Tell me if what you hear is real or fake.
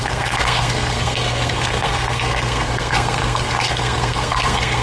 fake